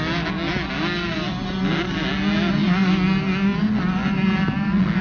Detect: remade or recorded recorded